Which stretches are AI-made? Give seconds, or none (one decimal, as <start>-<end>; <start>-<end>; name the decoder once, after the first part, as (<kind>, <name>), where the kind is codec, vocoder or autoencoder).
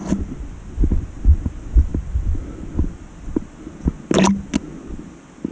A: none